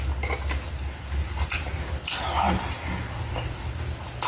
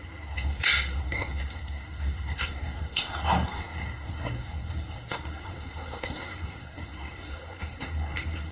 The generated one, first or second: second